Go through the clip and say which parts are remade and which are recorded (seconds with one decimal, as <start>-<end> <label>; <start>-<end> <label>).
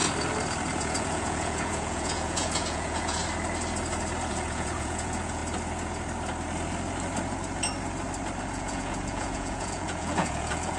0.0-0.8 recorded; 0.8-3.2 remade; 3.2-4.3 recorded; 4.3-5.4 remade; 5.4-8.4 recorded; 8.4-10.8 remade